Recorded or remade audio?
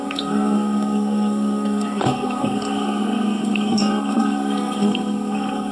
remade